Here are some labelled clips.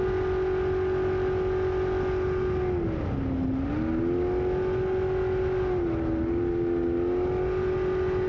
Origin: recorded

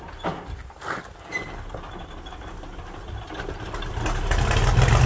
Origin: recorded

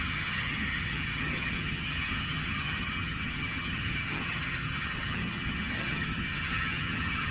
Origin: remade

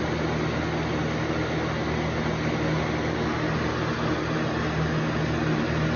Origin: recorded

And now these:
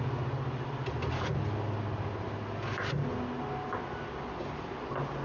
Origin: recorded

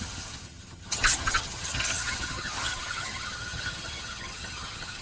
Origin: remade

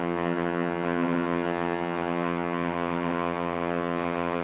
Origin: remade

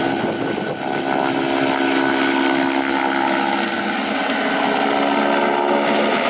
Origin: recorded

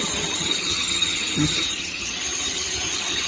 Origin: remade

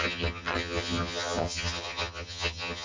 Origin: remade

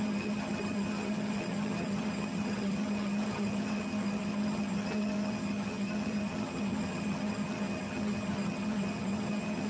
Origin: remade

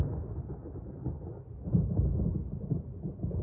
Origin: recorded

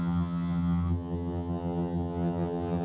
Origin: remade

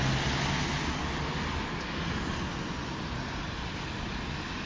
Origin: recorded